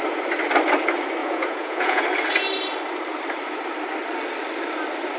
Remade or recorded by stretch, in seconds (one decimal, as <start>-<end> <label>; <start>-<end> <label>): 0.0-1.2 recorded; 1.2-2.0 remade; 2.0-5.2 recorded